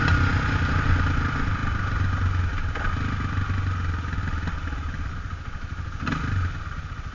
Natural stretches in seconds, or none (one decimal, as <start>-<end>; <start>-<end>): 0.0-7.1